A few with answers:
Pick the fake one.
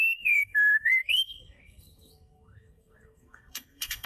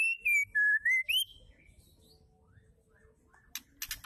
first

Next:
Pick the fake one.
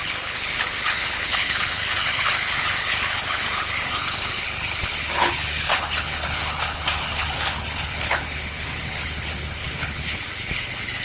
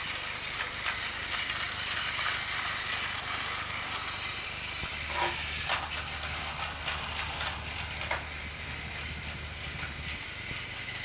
first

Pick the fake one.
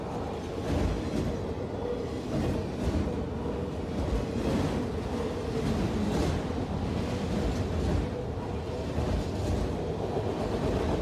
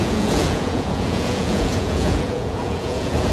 second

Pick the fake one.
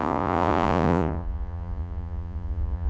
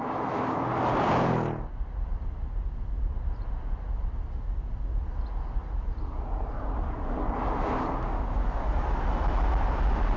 first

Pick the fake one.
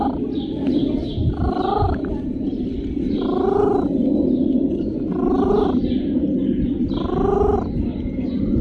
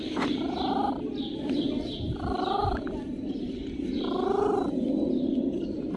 first